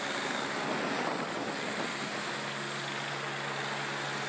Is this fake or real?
real